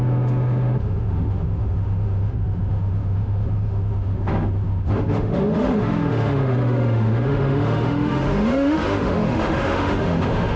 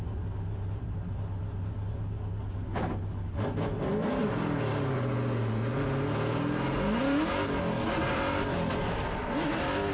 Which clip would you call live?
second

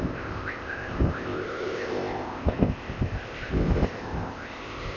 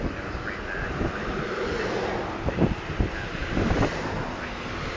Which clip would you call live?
second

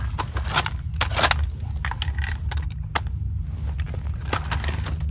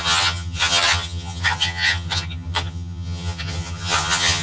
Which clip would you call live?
first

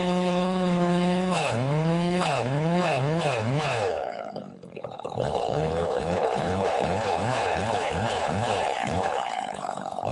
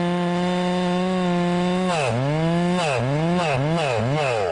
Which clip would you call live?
second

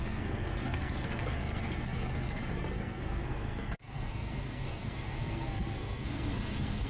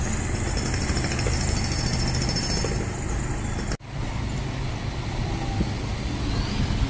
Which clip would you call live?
second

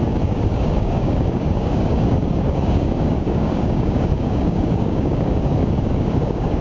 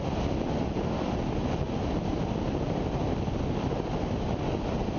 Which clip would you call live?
second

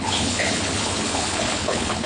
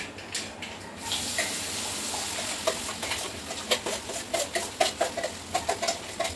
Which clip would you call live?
second